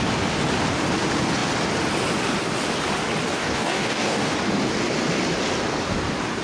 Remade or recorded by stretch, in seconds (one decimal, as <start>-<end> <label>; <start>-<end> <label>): 0.0-3.3 recorded; 3.3-4.3 remade; 4.3-6.4 recorded